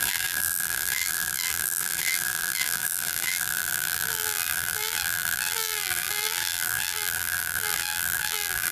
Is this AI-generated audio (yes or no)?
yes